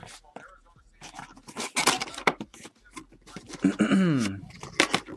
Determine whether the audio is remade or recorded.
recorded